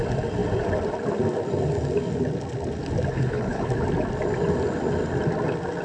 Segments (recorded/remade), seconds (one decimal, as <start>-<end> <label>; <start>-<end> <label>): 0.0-3.1 recorded; 3.1-3.7 remade; 3.7-5.8 recorded